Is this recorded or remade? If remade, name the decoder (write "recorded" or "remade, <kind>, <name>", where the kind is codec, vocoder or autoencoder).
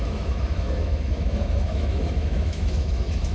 remade, autoencoder, DAC-VAE